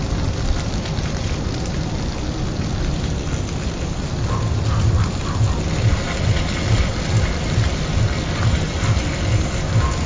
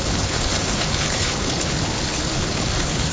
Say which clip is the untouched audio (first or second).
first